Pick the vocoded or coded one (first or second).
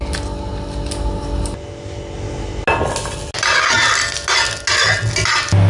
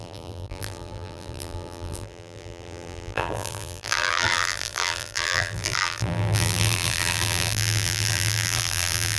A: second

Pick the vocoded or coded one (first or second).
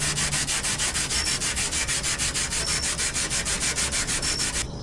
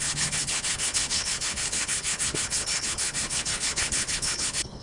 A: second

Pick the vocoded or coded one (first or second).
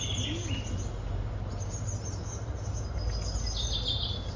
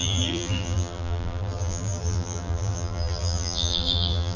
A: second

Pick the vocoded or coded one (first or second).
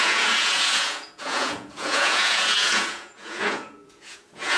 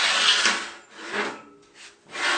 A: first